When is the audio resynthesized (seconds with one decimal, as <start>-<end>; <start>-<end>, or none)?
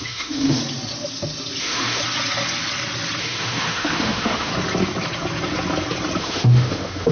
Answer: 0.0-0.6; 1.6-2.0; 3.2-4.5; 6.2-7.1